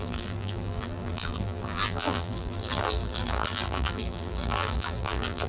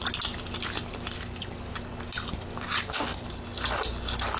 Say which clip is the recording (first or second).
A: second